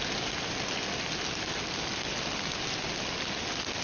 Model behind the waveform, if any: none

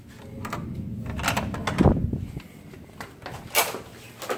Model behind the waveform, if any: none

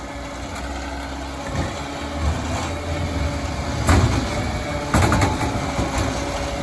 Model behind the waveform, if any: none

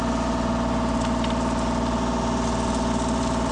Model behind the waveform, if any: none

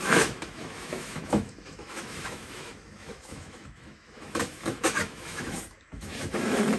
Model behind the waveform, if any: autoencoder, DAC-VAE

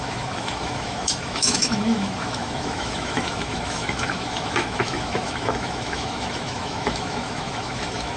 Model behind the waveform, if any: autoencoder, DAC-VAE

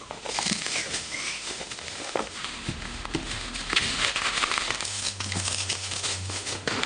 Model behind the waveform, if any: autoencoder, DAC-VAE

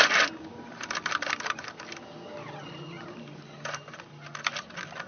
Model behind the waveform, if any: none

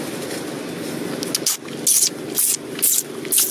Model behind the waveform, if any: none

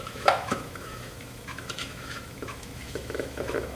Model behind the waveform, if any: autoencoder, DAC-VAE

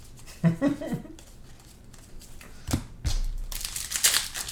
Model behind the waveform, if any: none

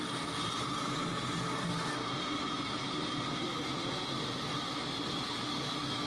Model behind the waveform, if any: none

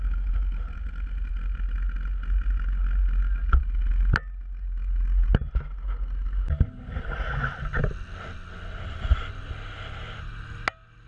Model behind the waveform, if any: none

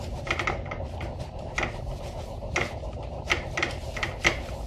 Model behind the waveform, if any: none